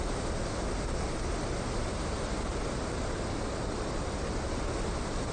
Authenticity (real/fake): real